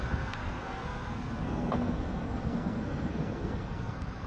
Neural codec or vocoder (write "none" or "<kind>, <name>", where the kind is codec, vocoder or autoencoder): codec, SNAC